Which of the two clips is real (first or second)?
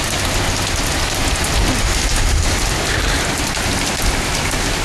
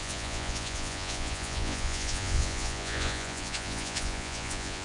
first